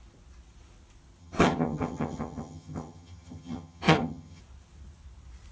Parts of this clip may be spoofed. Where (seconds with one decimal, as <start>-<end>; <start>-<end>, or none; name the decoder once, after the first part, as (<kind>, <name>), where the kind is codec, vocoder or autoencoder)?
1.2-4.4 (vocoder, HiFi-GAN)